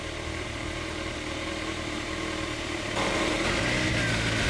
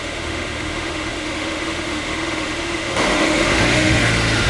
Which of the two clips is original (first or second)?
first